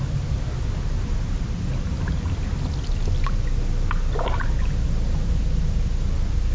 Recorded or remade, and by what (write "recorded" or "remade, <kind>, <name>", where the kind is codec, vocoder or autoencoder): recorded